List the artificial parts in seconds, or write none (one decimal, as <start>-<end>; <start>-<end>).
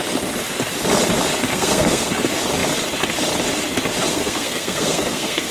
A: 1.5-2.1; 4.1-5.5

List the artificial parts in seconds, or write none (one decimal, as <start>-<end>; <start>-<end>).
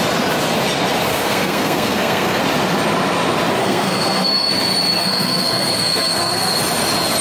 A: 1.1-2.4; 3.6-4.5; 5.0-6.6